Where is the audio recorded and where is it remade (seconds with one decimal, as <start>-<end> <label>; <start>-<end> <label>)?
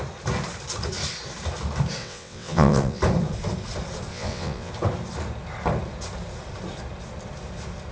0.0-2.0 recorded; 2.0-3.0 remade; 3.0-4.1 recorded; 4.1-4.7 remade; 4.7-7.9 recorded